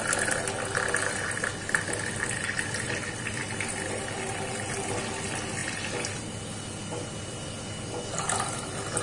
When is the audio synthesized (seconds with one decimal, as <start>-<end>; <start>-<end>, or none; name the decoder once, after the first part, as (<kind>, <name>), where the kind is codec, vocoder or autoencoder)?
none